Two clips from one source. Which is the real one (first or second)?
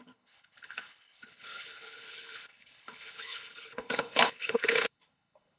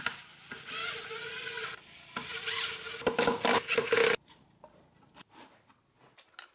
second